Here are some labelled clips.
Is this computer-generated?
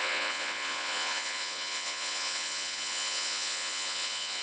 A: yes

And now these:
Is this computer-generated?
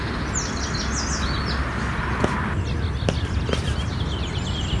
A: no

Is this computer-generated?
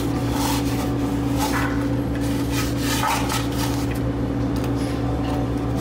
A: no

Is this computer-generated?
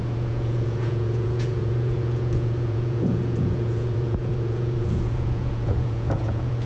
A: yes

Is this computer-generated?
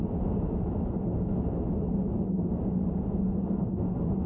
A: no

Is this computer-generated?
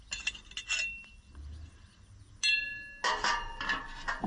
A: no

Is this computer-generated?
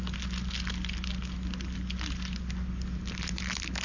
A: no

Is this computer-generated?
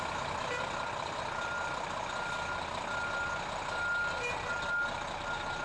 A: no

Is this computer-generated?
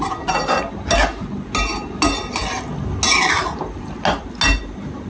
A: no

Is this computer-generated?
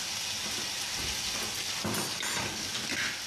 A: no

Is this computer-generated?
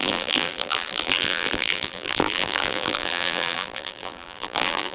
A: yes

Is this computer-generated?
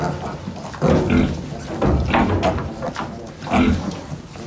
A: no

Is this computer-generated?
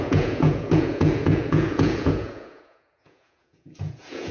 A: yes